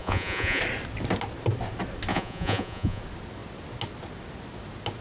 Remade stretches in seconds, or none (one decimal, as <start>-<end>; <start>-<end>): 0.0-0.6; 2.1-3.0